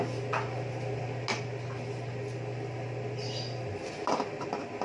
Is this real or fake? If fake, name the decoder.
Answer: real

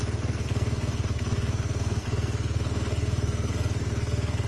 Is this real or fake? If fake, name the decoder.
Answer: fake, codec, SNAC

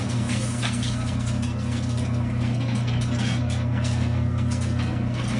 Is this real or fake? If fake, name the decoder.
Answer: fake, codec, SNAC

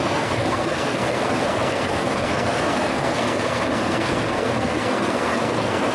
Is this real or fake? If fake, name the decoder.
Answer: fake, codec, SNAC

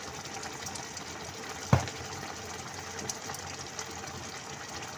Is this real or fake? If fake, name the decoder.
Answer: real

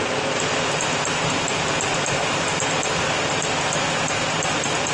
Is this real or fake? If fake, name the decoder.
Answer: real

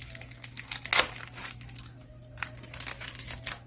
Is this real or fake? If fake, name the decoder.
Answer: real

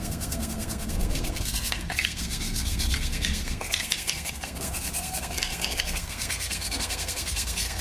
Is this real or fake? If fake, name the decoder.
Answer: fake, codec, SNAC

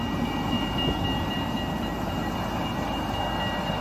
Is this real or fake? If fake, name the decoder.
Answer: real